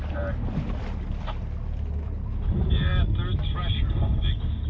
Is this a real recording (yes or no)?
yes